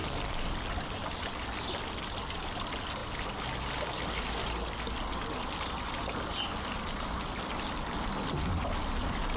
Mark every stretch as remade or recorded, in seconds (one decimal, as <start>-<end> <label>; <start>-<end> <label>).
0.0-9.4 recorded